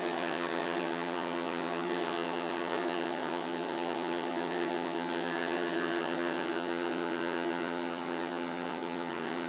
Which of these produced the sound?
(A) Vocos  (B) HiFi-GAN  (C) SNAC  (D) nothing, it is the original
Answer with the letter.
B